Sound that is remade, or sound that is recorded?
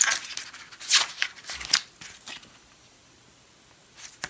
recorded